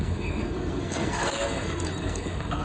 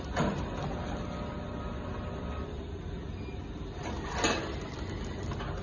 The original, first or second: second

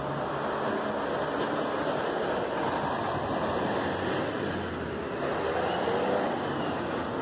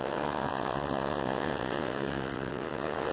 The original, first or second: first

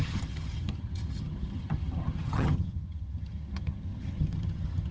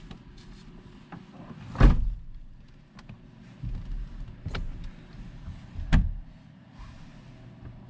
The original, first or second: second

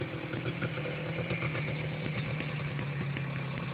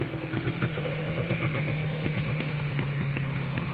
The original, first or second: first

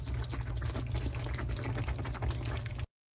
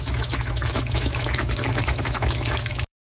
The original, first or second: first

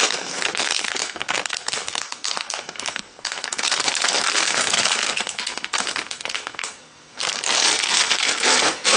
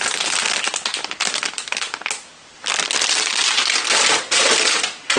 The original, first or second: second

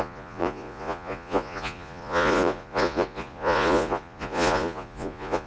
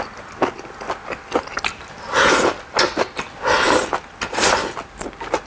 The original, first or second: second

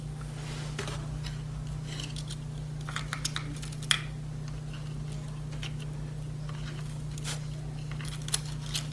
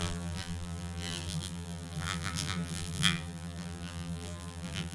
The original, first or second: first